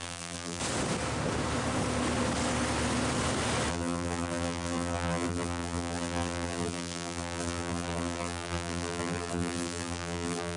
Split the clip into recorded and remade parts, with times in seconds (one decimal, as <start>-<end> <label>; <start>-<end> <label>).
0.0-0.6 remade; 0.6-3.7 recorded; 3.7-10.6 remade